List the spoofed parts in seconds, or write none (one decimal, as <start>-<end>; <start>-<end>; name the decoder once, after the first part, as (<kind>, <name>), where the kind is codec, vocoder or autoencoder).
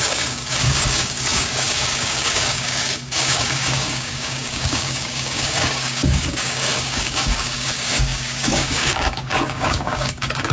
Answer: 0.0-10.5 (codec, DAC)